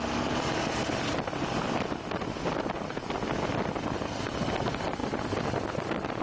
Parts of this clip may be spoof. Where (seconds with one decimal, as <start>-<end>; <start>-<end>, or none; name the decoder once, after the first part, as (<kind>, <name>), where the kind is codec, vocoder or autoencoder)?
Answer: none